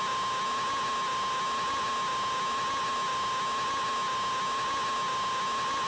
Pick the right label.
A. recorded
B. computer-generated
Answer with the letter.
A